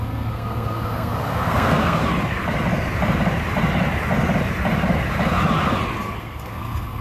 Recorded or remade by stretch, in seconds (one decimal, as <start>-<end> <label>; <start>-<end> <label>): 0.0-2.0 remade; 2.0-6.2 recorded; 6.2-7.0 remade